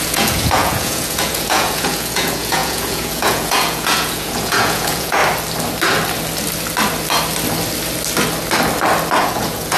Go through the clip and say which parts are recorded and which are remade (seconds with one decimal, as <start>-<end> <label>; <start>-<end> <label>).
0.0-5.2 remade; 5.2-9.2 recorded; 9.2-9.8 remade